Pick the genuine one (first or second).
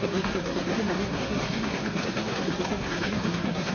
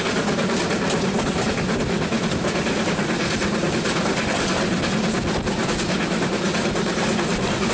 second